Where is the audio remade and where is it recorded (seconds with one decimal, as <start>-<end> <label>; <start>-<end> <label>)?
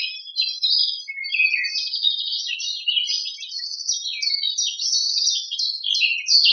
0.0-6.5 recorded